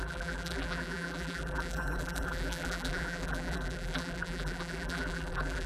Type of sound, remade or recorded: remade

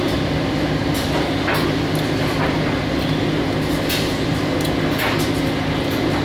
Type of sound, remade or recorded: recorded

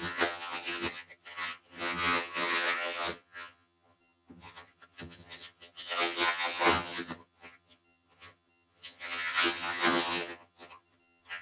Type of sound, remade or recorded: remade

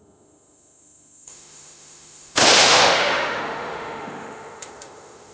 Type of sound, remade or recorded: remade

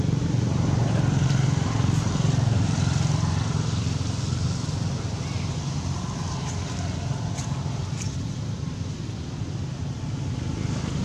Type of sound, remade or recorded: recorded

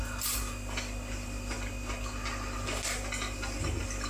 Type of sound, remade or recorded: recorded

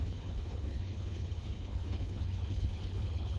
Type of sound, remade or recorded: remade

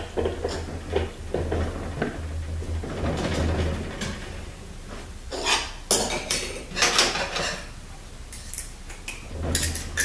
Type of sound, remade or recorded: recorded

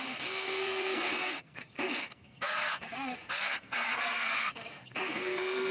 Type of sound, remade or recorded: remade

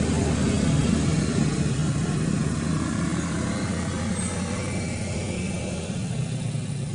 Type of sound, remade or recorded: recorded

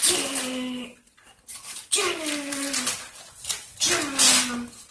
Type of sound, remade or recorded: recorded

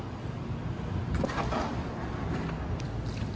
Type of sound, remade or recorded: recorded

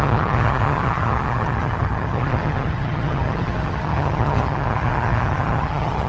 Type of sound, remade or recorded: remade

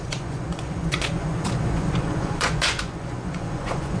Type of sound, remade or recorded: remade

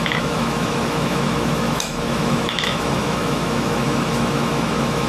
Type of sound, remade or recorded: remade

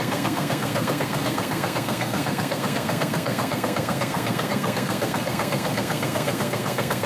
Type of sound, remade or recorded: remade